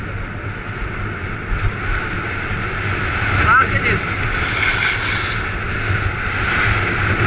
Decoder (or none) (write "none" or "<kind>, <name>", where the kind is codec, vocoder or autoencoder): none